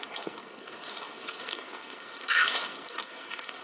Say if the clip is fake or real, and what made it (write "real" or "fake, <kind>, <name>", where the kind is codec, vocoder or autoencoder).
fake, codec, SNAC